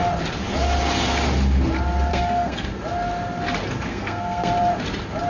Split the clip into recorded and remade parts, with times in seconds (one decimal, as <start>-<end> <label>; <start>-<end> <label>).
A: 0.0-2.1 recorded; 2.1-2.7 remade; 2.7-3.9 recorded; 3.9-4.5 remade; 4.5-5.3 recorded